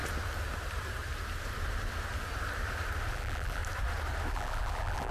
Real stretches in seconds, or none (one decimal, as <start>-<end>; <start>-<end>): 0.0-3.1; 3.6-4.3